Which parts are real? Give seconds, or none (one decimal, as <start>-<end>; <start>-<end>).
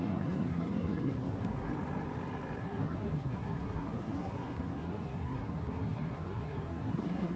1.7-2.6